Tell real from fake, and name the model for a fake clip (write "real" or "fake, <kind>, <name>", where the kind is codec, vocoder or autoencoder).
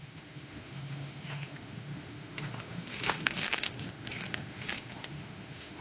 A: fake, autoencoder, DAC-VAE